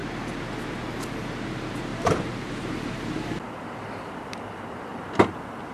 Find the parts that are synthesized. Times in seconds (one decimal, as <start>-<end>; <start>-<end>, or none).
1.9-2.9